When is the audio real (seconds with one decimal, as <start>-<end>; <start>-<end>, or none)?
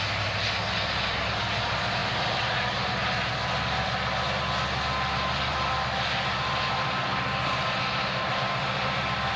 0.0-9.4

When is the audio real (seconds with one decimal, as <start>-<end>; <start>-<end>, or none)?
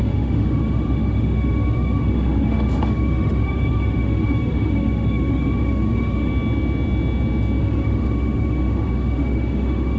6.3-7.6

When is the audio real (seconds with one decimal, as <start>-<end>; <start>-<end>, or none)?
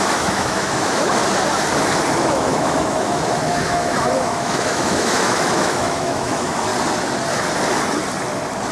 1.2-2.1; 6.7-8.7